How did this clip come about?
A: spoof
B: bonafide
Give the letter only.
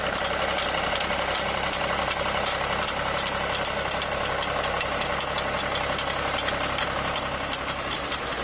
B